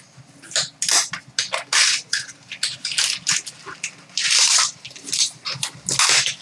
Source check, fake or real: real